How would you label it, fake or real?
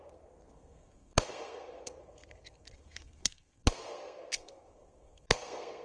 fake